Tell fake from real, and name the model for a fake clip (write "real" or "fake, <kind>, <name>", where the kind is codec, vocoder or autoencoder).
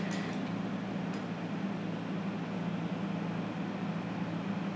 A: real